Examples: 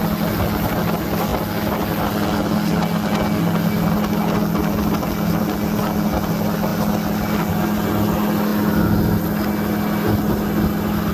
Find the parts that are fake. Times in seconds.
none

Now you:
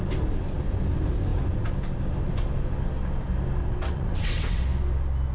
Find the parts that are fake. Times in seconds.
3.6-4.6 (vocoder, WaveNeXt)

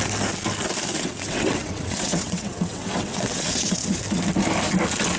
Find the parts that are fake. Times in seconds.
0.9-4.0 (vocoder, WaveNeXt)

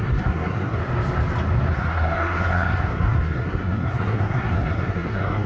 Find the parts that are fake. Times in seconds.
0.0-0.8 (codec, SNAC); 1.7-5.5